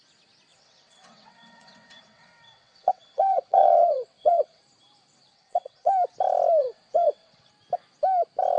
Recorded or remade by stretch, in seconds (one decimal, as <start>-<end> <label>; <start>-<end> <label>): 0.0-0.5 recorded; 0.5-4.6 remade; 4.6-5.3 recorded; 5.3-5.9 remade; 5.9-6.6 recorded; 6.6-7.5 remade; 7.5-8.6 recorded

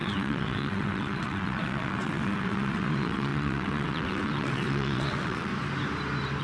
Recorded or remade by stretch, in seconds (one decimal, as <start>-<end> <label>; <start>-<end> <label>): 0.0-5.5 remade; 5.5-6.4 recorded